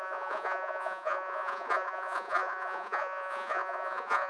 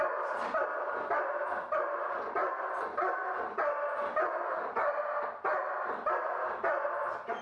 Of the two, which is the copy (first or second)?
first